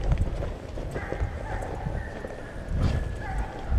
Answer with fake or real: real